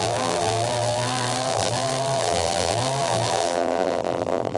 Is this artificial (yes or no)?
yes